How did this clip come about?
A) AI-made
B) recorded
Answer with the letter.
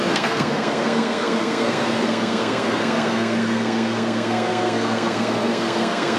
A